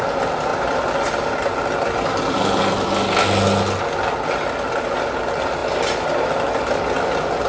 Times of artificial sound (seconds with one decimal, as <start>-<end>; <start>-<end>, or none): none